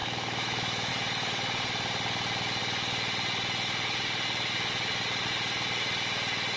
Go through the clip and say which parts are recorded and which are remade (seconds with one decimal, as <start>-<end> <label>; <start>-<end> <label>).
0.0-0.9 remade; 0.9-6.6 recorded